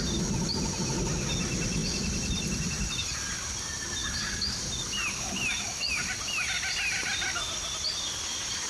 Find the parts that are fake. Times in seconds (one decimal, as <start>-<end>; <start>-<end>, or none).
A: none

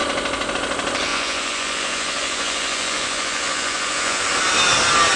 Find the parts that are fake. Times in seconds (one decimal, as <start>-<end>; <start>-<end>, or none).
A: 1.1-4.2

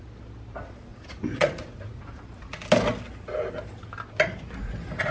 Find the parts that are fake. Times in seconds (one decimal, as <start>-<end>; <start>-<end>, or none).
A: 0.9-2.2

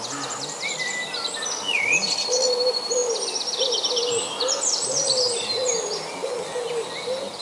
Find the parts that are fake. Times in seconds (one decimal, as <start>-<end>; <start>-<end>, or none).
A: none

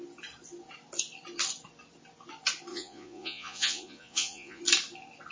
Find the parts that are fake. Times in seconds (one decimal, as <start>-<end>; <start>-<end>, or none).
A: 2.7-4.6